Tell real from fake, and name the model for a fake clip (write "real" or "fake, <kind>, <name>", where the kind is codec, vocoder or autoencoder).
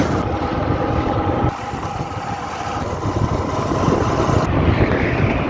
real